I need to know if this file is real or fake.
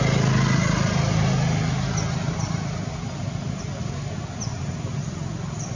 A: real